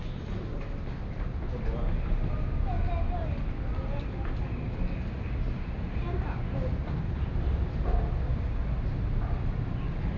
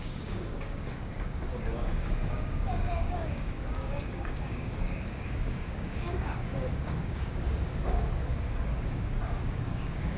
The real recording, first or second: first